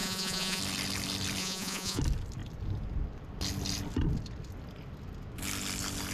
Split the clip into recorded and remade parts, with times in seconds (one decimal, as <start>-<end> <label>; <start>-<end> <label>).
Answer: 0.0-0.6 remade; 0.6-1.4 recorded; 1.4-2.0 remade; 2.0-6.1 recorded